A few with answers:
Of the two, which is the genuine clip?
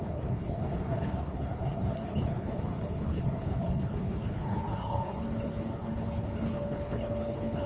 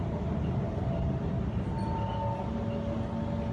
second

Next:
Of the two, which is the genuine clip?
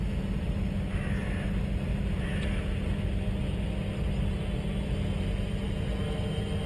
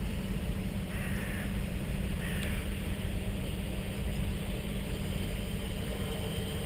first